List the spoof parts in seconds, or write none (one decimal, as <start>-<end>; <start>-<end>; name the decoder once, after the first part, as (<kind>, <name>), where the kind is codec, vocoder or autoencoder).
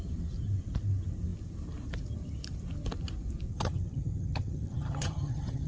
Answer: 3.5-5.7 (vocoder, HiFi-GAN)